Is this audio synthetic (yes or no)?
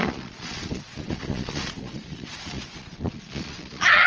yes